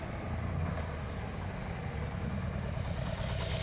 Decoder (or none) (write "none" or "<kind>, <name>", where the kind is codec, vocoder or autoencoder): none